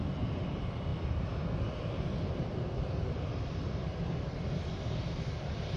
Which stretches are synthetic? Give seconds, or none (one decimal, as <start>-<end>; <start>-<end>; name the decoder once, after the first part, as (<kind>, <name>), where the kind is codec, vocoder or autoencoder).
0.0-0.9 (vocoder, BigVGAN v2); 2.3-5.8